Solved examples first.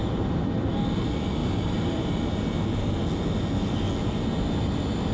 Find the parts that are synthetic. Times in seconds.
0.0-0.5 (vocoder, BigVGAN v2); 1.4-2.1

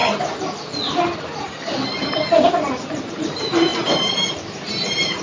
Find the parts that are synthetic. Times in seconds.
3.1-5.2 (vocoder, BigVGAN v2)

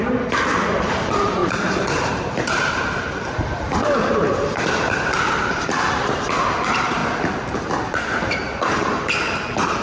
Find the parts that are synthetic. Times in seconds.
0.0-7.0 (vocoder, BigVGAN v2); 7.9-9.8

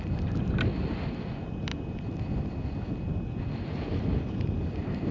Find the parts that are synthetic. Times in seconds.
0.7-1.2 (vocoder, BigVGAN v2)

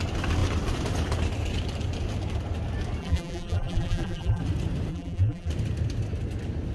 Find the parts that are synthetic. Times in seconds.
3.0-4.4 (vocoder, BigVGAN v2); 4.9-5.5

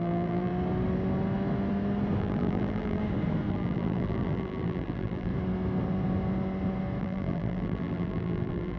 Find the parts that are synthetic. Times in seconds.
0.0-0.5 (vocoder, BigVGAN v2); 2.2-3.0; 3.5-5.3; 7.0-8.8

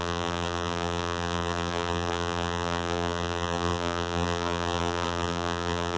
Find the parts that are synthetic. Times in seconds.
0.0-6.0 (vocoder, BigVGAN v2)